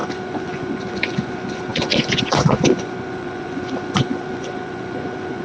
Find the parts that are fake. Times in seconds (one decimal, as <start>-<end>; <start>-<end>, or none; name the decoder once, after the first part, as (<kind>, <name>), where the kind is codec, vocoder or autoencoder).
0.0-5.4 (vocoder, Vocos)